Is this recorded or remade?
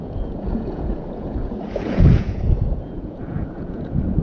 remade